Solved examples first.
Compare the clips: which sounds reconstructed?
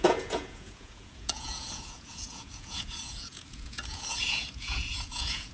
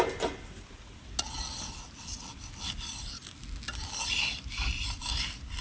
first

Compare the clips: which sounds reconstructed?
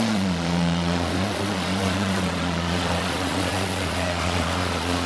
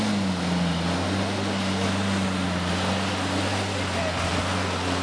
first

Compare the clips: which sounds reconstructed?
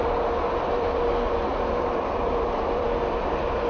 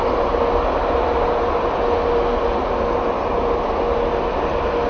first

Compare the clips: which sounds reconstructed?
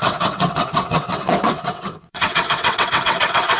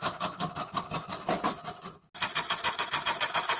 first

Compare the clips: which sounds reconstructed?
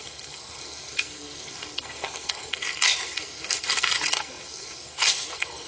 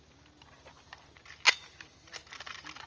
first